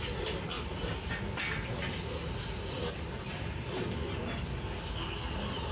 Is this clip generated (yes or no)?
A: no